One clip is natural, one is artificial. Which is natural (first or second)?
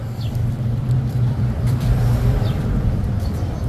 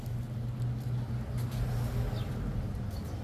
second